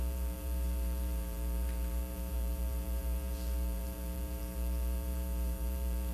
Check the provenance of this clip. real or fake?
fake